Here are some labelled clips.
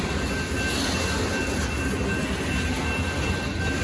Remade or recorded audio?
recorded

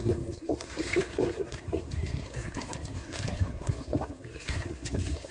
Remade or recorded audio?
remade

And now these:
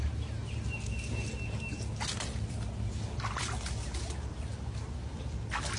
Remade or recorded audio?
recorded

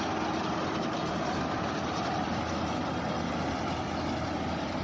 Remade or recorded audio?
recorded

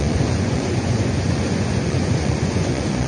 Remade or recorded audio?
remade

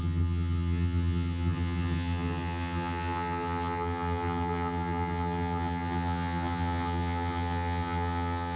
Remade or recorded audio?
remade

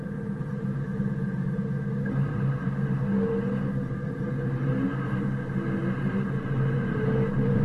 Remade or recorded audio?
recorded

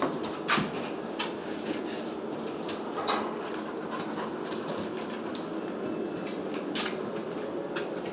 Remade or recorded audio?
recorded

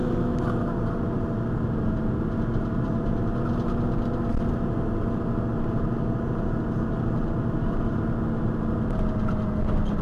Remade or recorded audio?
recorded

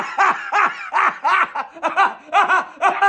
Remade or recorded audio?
recorded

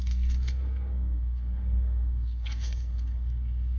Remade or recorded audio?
remade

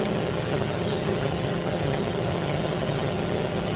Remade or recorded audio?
remade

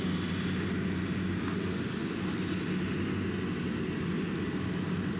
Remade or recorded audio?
recorded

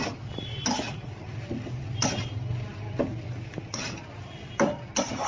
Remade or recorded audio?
recorded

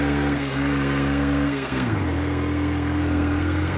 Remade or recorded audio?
remade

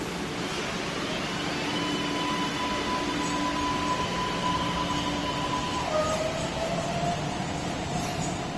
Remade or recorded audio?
recorded